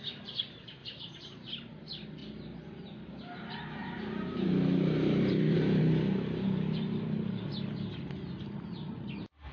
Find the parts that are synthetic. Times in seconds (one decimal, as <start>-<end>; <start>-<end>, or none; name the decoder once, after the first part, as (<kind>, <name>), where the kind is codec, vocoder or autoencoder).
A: 0.8-1.5 (vocoder, BigVGAN v2); 3.8-5.8